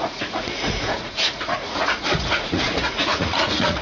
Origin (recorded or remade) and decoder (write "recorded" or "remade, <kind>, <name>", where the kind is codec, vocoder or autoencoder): remade, vocoder, Vocos